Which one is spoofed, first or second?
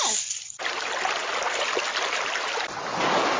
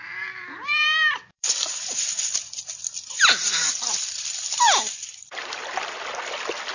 second